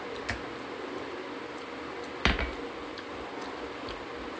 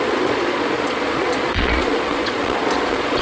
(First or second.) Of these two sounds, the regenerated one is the second